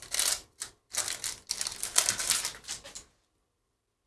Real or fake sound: real